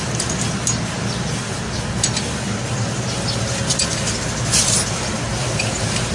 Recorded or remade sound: recorded